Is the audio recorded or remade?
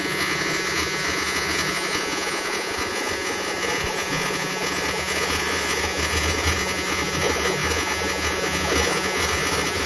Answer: remade